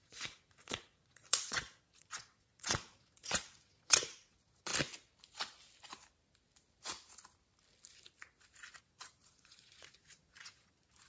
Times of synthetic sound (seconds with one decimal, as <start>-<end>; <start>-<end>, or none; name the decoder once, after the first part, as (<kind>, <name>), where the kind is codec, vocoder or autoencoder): 0.0-4.7 (vocoder, Vocos); 8.8-11.1